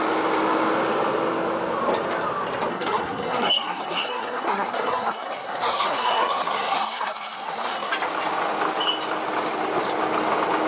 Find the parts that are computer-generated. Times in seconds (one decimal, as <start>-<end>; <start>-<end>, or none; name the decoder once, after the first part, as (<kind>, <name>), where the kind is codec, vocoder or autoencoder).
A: 2.7-7.9 (codec, SNAC)